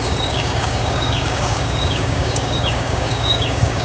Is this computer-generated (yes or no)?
yes